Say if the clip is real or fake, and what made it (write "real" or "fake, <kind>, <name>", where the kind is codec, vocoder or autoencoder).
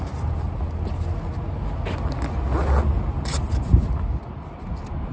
real